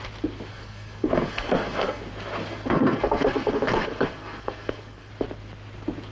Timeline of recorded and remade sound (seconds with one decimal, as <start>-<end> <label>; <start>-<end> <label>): 0.0-0.5 recorded; 0.5-2.0 remade; 2.0-2.5 recorded; 2.5-5.1 remade; 5.1-6.1 recorded